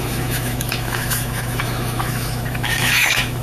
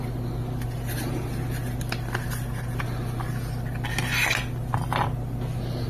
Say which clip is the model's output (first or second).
first